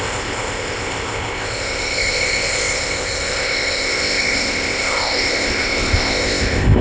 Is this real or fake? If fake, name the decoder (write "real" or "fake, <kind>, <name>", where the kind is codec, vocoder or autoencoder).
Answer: fake, codec, ZipCodec